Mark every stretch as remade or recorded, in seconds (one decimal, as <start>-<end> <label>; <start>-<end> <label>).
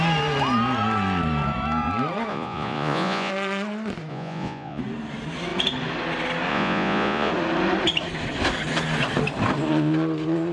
0.0-2.3 recorded; 2.3-3.3 remade; 3.3-4.1 recorded; 4.1-4.8 remade; 4.8-6.5 recorded; 6.5-7.3 remade; 7.3-10.5 recorded